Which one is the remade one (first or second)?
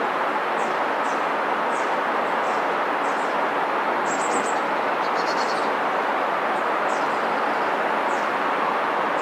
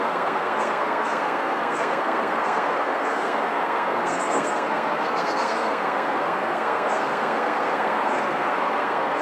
second